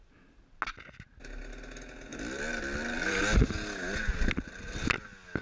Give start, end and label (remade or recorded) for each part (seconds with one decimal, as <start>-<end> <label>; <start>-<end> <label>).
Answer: 0.0-5.4 recorded